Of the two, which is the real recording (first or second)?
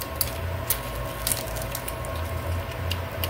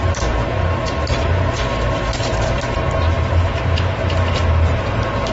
first